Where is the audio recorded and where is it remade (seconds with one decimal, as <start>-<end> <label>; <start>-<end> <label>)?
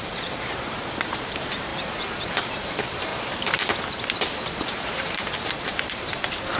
0.0-3.1 remade; 3.1-4.6 recorded; 4.6-6.6 remade